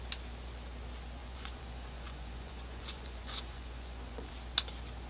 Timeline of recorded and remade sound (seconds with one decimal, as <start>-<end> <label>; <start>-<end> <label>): 0.0-1.2 recorded; 1.2-4.3 remade; 4.3-5.1 recorded